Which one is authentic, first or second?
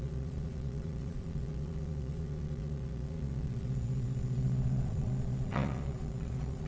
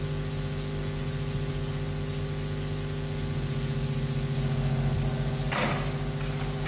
second